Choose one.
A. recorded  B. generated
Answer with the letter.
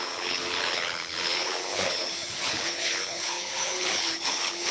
B